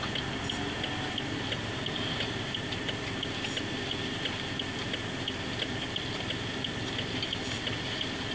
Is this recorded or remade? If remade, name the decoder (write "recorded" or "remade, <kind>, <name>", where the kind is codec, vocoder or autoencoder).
recorded